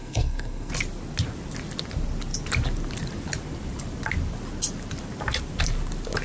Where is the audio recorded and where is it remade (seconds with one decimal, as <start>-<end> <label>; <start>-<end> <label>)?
0.0-0.7 remade; 0.7-6.2 recorded